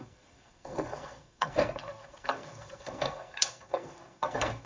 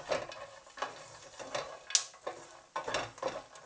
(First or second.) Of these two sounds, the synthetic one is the first